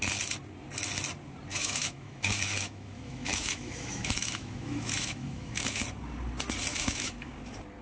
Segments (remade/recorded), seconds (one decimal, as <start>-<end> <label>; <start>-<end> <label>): 0.0-1.5 recorded; 1.5-5.8 remade; 5.8-6.7 recorded; 6.7-7.3 remade; 7.3-7.8 recorded